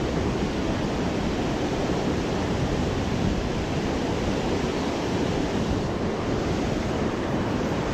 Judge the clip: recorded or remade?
remade